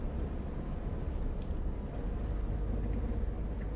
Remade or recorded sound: recorded